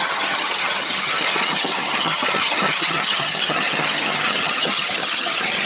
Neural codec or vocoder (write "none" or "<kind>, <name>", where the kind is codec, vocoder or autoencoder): vocoder, HiFi-GAN